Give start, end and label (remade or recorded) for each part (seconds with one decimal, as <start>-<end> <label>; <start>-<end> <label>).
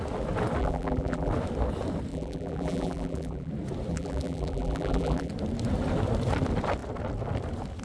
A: 0.0-0.6 recorded; 0.6-1.3 remade; 1.3-2.1 recorded; 2.1-3.5 remade; 3.5-3.9 recorded; 3.9-5.3 remade; 5.3-7.8 recorded